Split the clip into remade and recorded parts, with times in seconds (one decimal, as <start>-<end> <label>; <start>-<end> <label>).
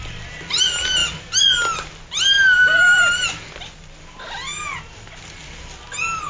0.0-6.3 recorded